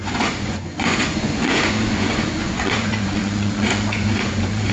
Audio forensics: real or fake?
fake